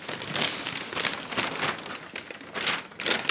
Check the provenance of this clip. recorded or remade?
recorded